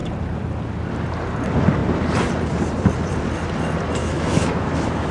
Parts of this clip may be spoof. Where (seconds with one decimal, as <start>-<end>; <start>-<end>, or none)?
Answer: 4.0-5.1